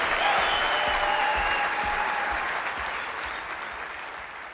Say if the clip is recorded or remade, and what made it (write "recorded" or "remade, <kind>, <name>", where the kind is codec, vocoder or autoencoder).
recorded